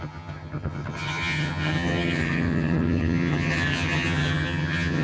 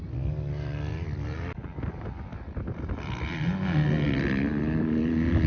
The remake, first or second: first